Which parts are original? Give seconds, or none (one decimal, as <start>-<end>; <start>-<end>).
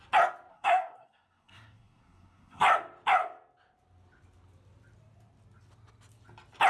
0.0-0.5; 2.6-6.7